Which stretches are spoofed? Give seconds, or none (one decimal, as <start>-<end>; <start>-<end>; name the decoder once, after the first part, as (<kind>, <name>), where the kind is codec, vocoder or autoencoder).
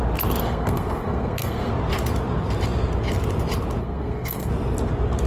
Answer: 0.4-1.7 (codec, SNAC); 3.8-4.5